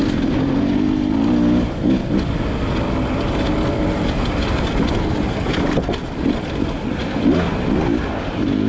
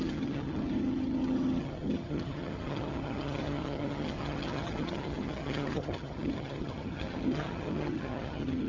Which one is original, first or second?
first